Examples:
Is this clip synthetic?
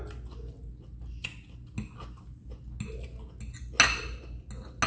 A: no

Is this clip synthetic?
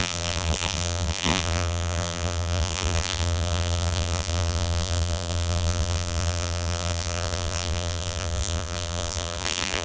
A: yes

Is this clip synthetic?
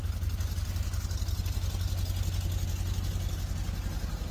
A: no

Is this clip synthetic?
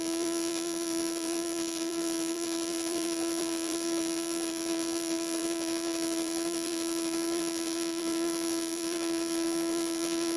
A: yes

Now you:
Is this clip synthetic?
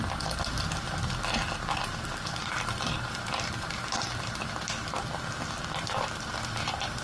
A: yes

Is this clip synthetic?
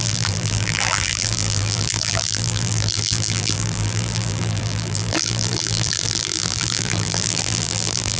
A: yes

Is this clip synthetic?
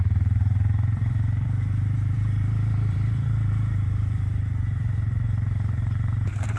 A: yes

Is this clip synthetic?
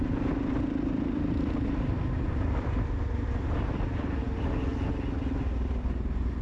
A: no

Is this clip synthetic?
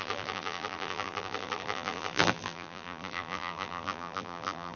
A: yes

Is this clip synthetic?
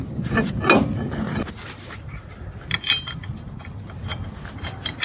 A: no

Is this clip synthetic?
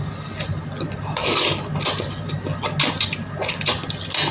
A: no